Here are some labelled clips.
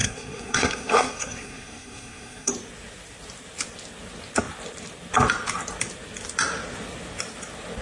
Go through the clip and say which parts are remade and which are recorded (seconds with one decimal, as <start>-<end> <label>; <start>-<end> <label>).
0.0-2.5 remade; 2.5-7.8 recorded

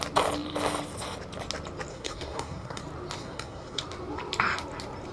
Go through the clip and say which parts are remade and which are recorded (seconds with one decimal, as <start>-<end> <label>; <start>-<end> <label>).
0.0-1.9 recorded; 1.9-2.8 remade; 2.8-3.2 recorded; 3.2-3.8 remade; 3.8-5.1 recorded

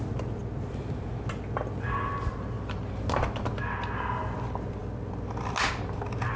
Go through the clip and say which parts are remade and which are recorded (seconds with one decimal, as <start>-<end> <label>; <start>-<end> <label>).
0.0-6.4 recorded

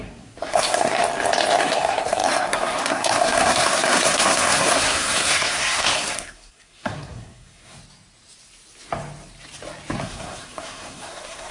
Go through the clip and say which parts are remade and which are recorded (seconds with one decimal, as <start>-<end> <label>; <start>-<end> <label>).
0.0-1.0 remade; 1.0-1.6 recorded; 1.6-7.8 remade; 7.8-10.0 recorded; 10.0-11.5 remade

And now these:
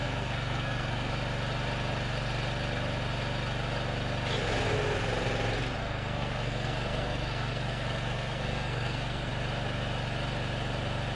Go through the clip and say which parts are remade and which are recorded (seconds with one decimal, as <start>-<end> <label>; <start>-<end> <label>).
0.0-1.1 remade; 1.1-5.8 recorded; 5.8-9.3 remade; 9.3-11.2 recorded